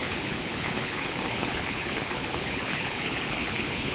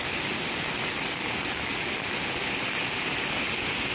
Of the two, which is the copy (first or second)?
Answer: first